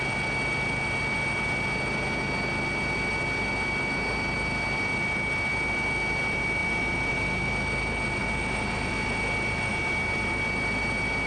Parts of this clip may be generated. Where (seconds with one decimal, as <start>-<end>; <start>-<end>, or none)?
none